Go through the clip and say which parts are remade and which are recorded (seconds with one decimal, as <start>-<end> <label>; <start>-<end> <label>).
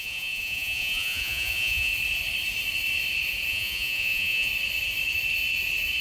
0.0-1.9 remade; 1.9-3.5 recorded; 3.5-4.5 remade; 4.5-6.0 recorded